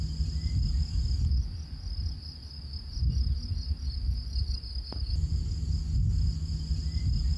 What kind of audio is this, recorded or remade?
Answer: recorded